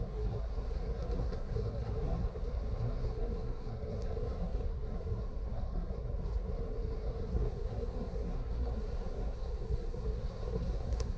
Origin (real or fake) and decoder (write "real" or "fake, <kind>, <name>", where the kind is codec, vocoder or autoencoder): fake, codec, SNAC